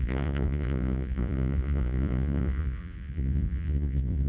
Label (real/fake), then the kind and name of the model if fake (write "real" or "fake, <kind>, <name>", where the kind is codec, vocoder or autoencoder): fake, vocoder, Vocos